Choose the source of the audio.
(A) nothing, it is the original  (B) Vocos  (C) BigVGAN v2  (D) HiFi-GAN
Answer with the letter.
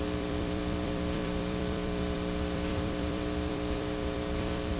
C